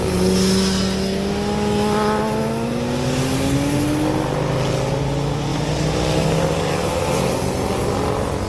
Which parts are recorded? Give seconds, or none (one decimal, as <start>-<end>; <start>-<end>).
0.0-8.5